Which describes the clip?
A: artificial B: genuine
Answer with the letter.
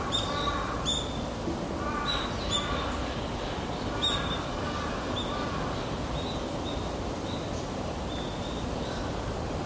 B